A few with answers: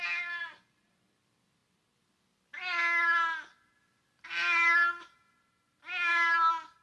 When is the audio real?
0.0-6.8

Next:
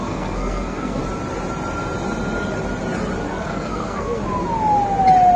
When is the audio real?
1.0-3.3; 4.2-5.4

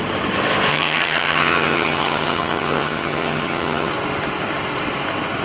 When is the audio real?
0.0-0.7; 3.9-5.4

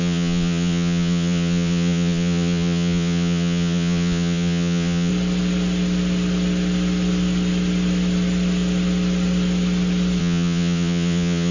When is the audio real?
5.1-10.2